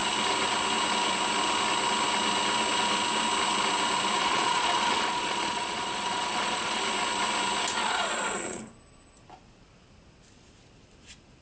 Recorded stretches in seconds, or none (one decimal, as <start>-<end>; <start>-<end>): 0.0-4.2; 6.8-7.8; 8.6-11.4